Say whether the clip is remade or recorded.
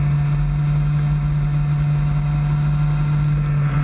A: recorded